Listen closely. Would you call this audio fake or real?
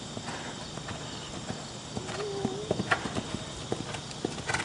real